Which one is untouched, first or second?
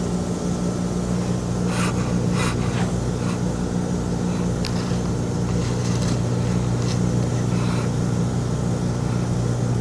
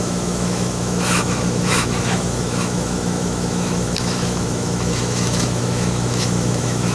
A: first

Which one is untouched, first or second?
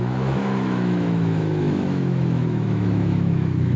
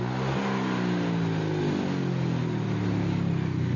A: second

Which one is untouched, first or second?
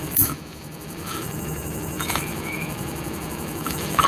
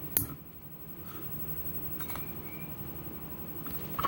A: second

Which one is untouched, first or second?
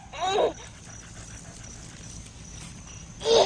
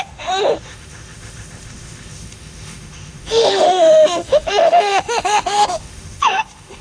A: first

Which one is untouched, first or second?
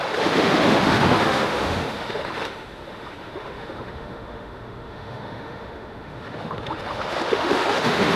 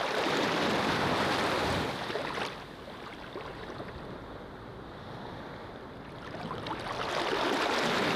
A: second